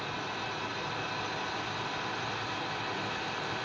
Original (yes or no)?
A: yes